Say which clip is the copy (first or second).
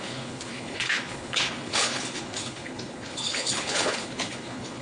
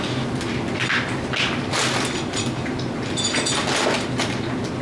first